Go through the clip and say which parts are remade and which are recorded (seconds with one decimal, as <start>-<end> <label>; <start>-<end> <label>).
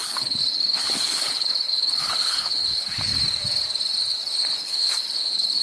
0.0-3.1 remade; 3.1-4.6 recorded; 4.6-5.6 remade